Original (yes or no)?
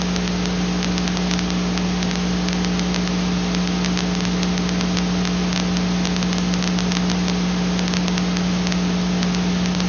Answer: yes